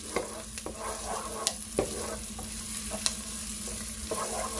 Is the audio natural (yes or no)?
yes